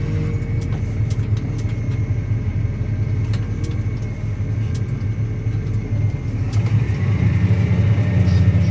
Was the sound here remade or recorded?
recorded